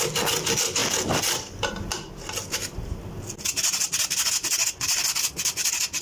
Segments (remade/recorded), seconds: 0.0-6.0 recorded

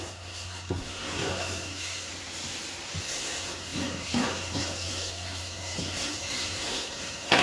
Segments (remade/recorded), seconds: 0.0-2.1 remade; 2.1-3.0 recorded; 3.0-7.4 remade

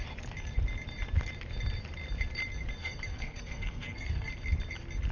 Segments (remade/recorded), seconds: 0.0-2.8 recorded; 2.8-4.3 remade; 4.3-5.1 recorded

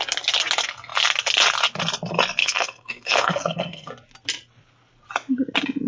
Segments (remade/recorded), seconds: 0.0-2.4 recorded; 2.4-3.9 remade; 3.9-5.9 recorded

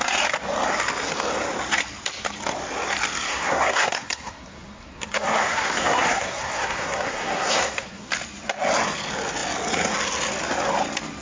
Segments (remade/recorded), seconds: 0.0-3.3 recorded; 3.3-8.1 remade; 8.1-11.2 recorded

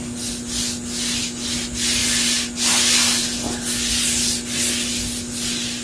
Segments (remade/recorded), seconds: 0.0-5.8 recorded